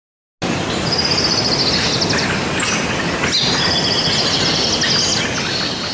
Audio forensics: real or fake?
real